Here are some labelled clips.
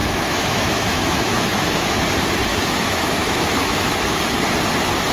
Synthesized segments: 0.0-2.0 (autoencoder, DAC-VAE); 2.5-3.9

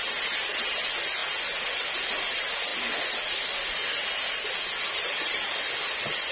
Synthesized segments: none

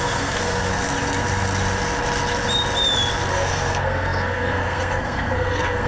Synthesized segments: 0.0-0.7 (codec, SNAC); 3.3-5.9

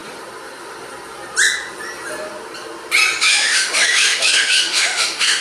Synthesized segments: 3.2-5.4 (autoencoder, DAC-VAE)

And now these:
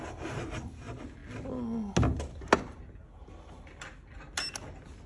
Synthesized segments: none

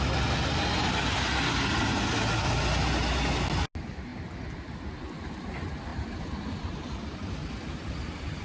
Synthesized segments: none